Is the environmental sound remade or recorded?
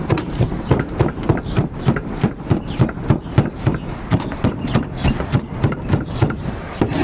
remade